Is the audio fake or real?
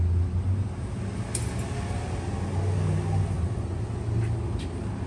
real